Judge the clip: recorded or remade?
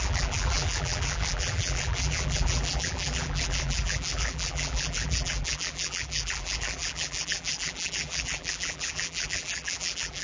remade